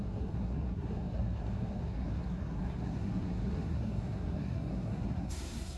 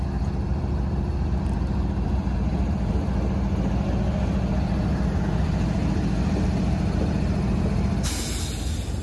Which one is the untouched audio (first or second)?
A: second